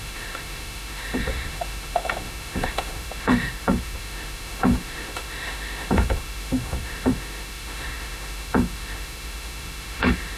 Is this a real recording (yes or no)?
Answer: no